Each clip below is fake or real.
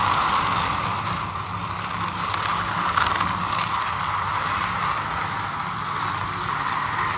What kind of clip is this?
real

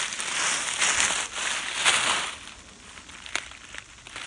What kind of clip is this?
real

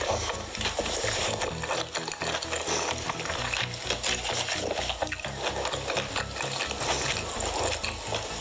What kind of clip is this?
real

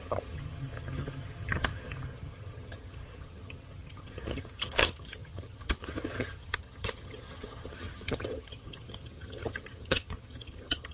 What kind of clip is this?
fake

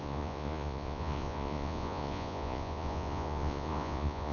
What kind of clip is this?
fake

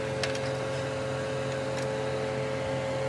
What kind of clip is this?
real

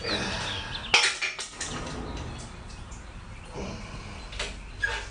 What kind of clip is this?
real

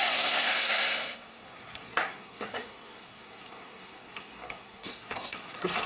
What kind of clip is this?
fake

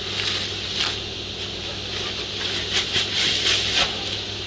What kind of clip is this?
real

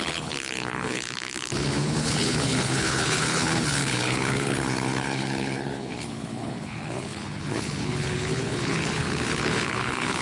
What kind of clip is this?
fake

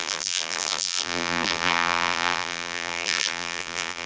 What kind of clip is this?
fake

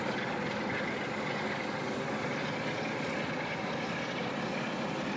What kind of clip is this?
real